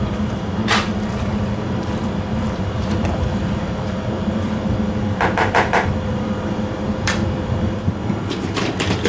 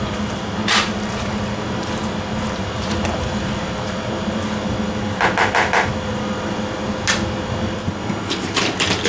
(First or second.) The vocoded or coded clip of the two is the first